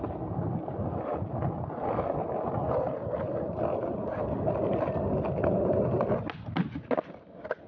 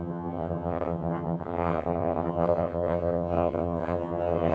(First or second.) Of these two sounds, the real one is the first